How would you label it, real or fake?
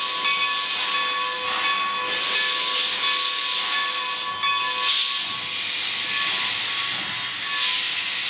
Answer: real